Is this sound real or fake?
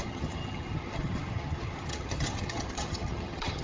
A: fake